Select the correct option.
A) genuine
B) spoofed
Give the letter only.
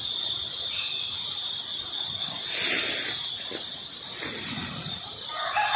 A